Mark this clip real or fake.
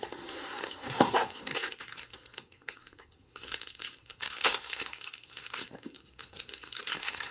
fake